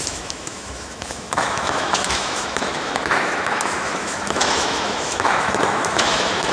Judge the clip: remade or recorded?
remade